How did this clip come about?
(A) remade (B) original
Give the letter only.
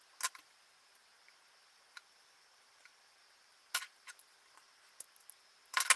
B